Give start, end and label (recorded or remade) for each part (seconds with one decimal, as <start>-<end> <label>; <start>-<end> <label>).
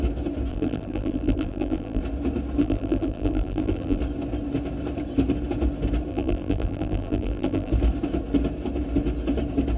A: 0.0-0.5 recorded; 0.5-2.0 remade; 2.0-2.6 recorded; 2.6-4.0 remade; 4.0-6.1 recorded; 6.1-7.7 remade; 7.7-9.8 recorded